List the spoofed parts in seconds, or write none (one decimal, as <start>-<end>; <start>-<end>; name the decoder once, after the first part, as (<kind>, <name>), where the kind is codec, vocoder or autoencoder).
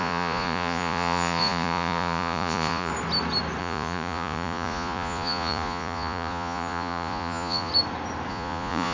0.0-2.9 (vocoder, Vocos); 3.6-7.7; 8.3-8.9